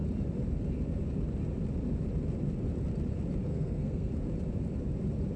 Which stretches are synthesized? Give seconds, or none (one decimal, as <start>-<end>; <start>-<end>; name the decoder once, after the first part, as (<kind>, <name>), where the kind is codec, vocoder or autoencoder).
3.5-4.1 (codec, SNAC)